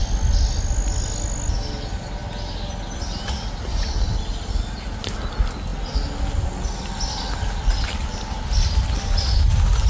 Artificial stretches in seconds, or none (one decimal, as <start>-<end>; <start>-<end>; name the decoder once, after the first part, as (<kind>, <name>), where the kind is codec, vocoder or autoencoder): none